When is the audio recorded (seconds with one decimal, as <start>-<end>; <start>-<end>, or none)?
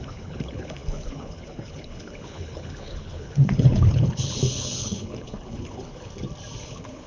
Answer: 6.1-6.6